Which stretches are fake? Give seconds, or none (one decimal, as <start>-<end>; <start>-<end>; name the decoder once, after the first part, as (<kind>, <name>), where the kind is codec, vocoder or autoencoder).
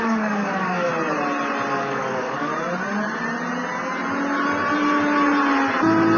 0.0-0.9 (codec, DAC); 1.7-2.5